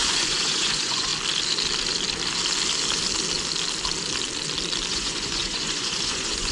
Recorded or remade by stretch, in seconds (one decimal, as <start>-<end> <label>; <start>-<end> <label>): 0.0-1.1 remade; 1.1-4.9 recorded; 4.9-6.5 remade